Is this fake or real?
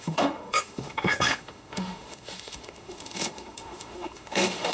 fake